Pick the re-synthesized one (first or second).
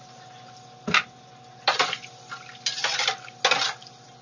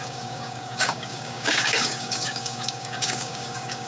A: second